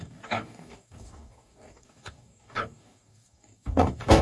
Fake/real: fake